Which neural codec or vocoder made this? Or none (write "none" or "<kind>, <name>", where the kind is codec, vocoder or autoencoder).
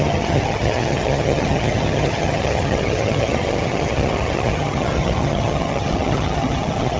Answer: vocoder, HiFi-GAN